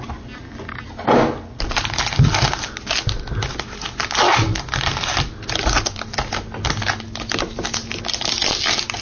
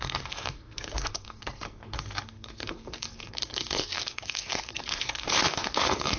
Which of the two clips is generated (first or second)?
second